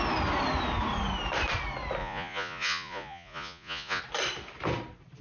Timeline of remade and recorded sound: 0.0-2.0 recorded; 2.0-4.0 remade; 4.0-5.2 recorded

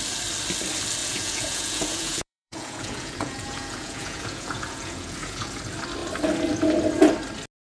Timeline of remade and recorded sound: 0.0-1.0 recorded; 1.0-5.6 remade; 5.6-7.7 recorded

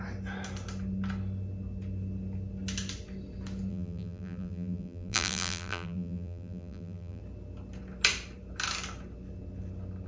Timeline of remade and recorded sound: 0.0-3.7 recorded; 3.7-7.2 remade; 7.2-10.1 recorded

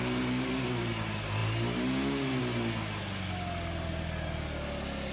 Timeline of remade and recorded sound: 0.0-5.1 recorded